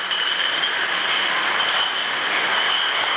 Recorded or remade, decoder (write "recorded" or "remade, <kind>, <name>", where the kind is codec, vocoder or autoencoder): recorded